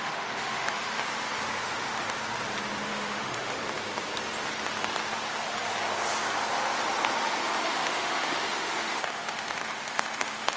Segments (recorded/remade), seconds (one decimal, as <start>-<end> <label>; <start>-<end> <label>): 0.0-0.9 remade; 0.9-1.6 recorded; 1.6-2.2 remade; 2.2-2.8 recorded; 2.8-3.6 remade; 3.6-7.7 recorded; 7.7-10.6 remade